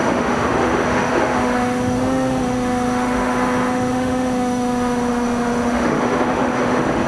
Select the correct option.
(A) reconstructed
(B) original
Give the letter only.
A